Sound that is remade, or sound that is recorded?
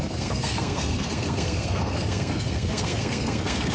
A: remade